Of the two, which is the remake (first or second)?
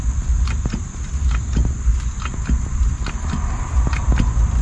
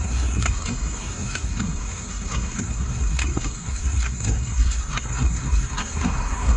second